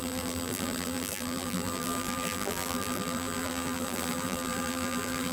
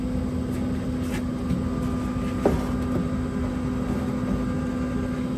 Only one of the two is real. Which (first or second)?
second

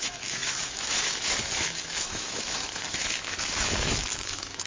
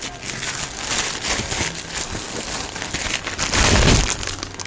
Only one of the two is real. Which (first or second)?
second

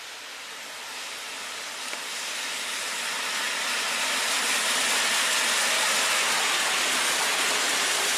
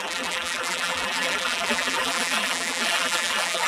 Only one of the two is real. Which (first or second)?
first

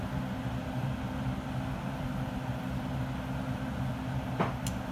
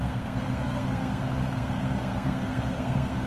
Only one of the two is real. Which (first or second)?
first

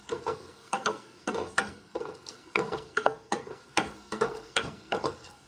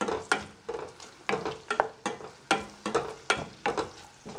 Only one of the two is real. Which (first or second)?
second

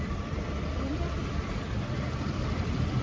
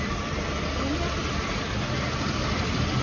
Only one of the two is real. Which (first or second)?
second